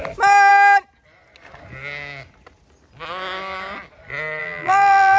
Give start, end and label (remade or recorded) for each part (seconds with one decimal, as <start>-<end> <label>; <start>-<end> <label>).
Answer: 0.0-4.4 recorded; 4.4-5.2 remade